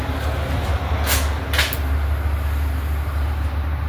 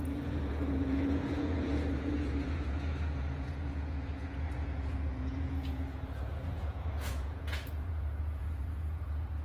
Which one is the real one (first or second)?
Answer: first